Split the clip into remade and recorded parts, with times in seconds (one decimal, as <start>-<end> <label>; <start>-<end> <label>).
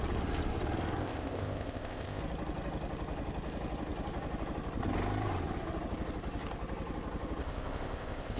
0.0-1.0 recorded; 1.0-2.2 remade; 2.2-7.4 recorded; 7.4-8.4 remade